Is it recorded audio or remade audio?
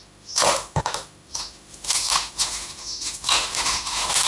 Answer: remade